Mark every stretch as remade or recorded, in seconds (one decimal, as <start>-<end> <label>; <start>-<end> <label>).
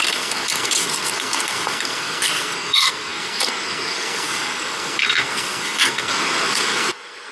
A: 0.0-7.3 remade